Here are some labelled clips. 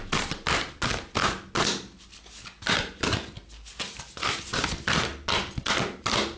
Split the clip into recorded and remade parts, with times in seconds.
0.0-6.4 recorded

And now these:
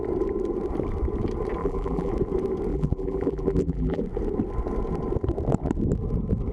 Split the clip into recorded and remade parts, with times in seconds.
0.0-1.6 recorded; 1.6-2.1 remade; 2.1-2.7 recorded; 2.7-4.0 remade; 4.0-6.5 recorded

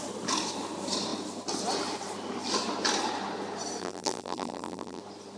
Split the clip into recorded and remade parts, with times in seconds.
0.0-3.8 recorded; 3.8-5.0 remade; 5.0-5.4 recorded

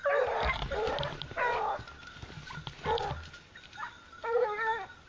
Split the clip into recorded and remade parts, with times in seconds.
0.0-0.6 remade; 0.6-5.1 recorded

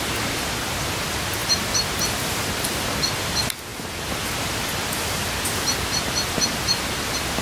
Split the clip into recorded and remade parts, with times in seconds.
0.0-7.4 recorded